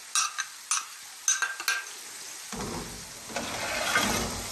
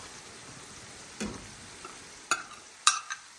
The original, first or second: first